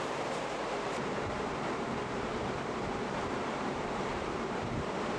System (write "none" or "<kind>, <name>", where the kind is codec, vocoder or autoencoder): vocoder, BigVGAN v2